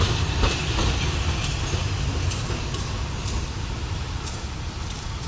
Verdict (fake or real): real